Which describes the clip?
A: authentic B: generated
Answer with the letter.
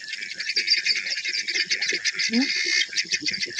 A